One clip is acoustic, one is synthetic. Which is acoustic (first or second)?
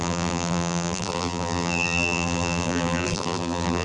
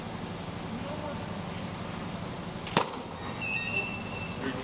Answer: second